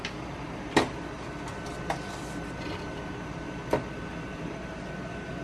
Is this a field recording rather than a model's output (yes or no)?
yes